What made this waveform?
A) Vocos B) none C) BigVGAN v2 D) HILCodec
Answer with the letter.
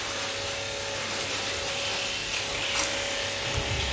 B